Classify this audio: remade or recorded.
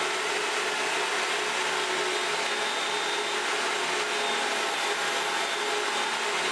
recorded